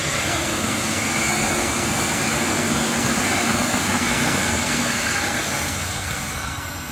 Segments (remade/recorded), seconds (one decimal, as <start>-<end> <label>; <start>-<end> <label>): 0.0-6.9 remade